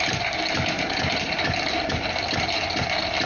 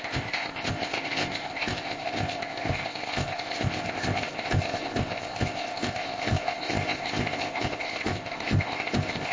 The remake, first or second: second